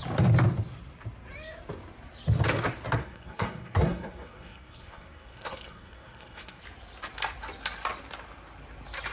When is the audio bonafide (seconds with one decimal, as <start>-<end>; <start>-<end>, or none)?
0.0-3.0; 6.6-9.1